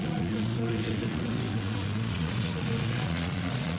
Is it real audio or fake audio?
fake